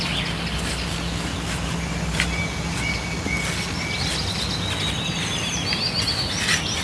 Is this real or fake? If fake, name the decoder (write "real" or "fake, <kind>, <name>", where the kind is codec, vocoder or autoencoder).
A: real